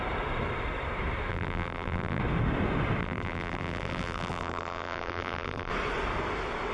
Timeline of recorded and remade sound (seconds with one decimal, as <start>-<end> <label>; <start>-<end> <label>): 0.0-1.3 recorded; 1.3-2.2 remade; 2.2-3.0 recorded; 3.0-5.7 remade; 5.7-6.7 recorded